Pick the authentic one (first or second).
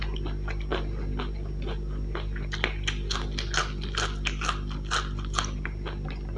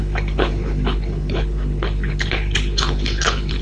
first